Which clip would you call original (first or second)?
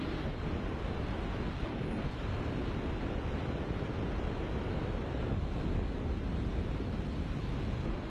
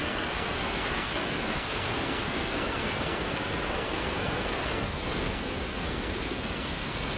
first